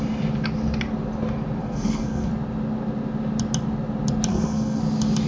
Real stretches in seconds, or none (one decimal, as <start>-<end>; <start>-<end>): 0.0-1.6; 2.3-4.3; 4.8-5.3

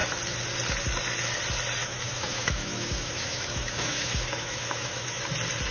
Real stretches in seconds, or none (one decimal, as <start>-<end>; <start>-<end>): 0.0-1.8; 5.2-5.7

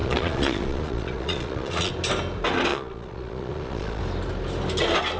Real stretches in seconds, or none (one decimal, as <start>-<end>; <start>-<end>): 1.9-2.7; 4.0-5.2

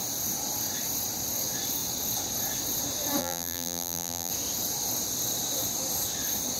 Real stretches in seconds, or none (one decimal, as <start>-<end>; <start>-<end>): 0.0-3.2; 4.3-6.6